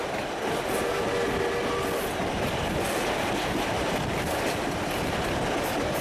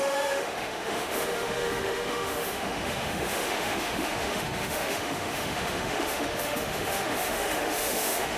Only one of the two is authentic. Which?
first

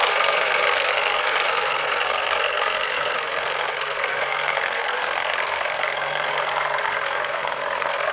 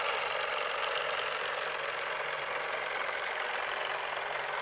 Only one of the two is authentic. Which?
second